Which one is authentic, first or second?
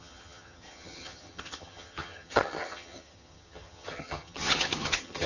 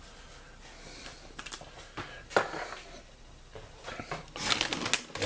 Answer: second